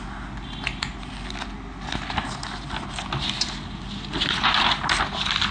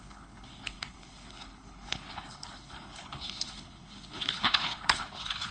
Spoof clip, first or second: second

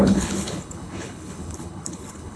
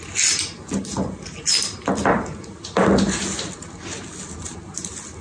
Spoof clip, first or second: first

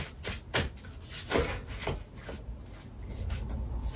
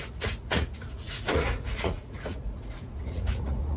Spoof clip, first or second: second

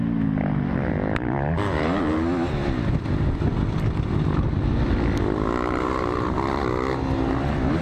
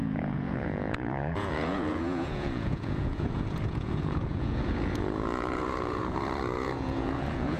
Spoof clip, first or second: second